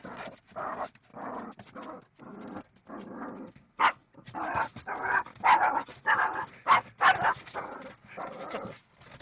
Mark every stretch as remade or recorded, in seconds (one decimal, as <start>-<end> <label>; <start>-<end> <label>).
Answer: 0.0-9.2 recorded